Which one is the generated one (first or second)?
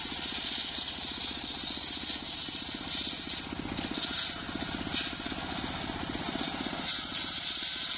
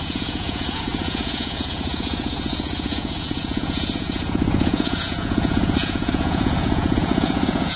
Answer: second